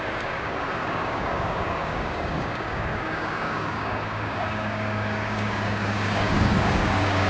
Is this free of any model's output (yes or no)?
no